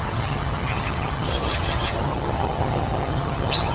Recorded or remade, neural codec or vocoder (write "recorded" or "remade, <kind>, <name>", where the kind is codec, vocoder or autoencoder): remade, vocoder, HiFi-GAN